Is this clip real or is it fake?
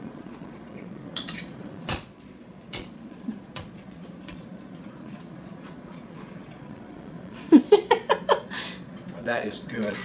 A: fake